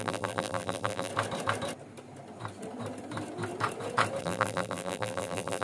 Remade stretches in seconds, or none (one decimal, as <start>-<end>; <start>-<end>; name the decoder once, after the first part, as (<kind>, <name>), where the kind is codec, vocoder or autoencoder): 0.0-1.1 (vocoder, BigVGAN v2); 4.2-5.6